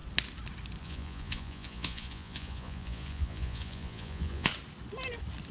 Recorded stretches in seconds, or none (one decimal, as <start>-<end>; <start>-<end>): 0.0-0.8; 4.5-5.5